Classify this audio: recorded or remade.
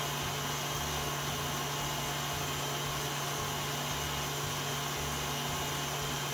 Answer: recorded